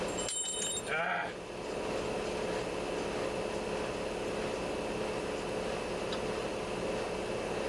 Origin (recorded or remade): recorded